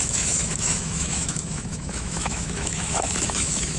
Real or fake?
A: fake